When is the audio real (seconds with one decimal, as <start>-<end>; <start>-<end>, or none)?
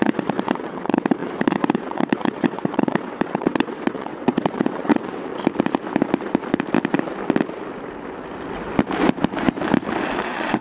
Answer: 5.3-10.2